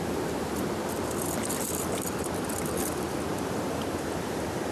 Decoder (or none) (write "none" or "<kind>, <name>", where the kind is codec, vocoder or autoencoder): vocoder, BigVGAN v2